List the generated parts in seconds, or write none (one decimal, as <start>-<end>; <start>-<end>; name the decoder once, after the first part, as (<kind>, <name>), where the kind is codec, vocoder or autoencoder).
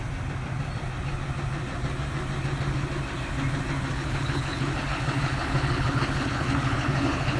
3.9-7.4 (codec, HILCodec)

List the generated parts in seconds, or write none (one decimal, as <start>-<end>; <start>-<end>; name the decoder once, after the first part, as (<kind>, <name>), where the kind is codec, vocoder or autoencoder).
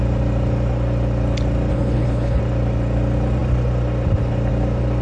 1.7-2.4 (codec, HILCodec)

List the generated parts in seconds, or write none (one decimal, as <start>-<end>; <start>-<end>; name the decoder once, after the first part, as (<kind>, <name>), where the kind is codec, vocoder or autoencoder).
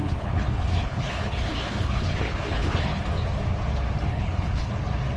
0.0-3.1 (codec, HILCodec); 4.1-4.7